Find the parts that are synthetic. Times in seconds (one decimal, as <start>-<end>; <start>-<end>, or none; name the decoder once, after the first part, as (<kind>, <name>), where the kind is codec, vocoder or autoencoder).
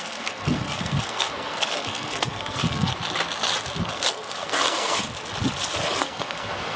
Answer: 0.0-2.9 (codec, SNAC); 3.8-5.0; 6.0-6.8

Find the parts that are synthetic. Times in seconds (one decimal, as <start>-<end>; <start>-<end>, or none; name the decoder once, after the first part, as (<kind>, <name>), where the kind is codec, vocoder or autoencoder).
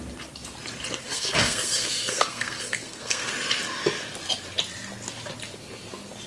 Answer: 1.0-3.3 (codec, SNAC)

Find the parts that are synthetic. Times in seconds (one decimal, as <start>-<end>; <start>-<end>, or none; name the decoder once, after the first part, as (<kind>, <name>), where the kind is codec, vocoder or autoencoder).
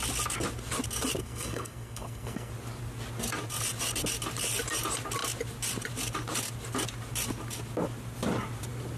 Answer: 1.2-2.5 (codec, SNAC)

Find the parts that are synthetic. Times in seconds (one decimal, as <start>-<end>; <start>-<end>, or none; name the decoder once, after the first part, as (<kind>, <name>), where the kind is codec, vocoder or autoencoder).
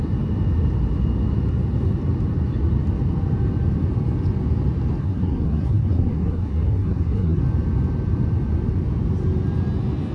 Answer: 5.0-7.4 (codec, SNAC)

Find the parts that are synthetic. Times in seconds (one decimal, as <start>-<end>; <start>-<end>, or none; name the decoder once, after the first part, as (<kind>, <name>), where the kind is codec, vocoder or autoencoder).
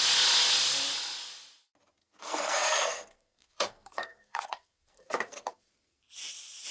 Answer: 2.0-6.0 (codec, SNAC)